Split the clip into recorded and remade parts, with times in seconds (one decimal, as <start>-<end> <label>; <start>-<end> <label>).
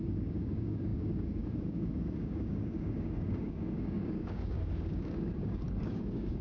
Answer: 0.0-6.4 remade